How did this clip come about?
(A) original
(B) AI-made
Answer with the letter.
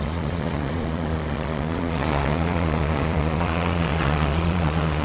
B